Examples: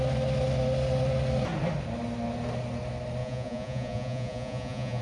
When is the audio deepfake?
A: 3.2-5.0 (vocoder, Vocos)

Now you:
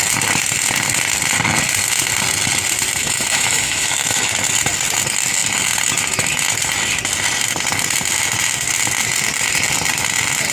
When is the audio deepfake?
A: 3.0-4.2 (autoencoder, DAC-VAE)